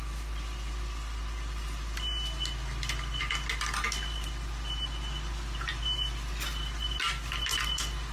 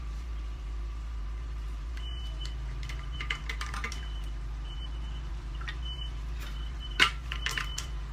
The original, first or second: first